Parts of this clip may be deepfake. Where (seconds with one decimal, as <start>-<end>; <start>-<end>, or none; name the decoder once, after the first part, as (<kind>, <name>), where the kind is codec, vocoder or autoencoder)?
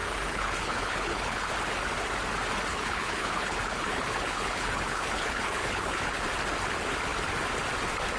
0.0-1.5 (codec, HILCodec); 2.7-6.2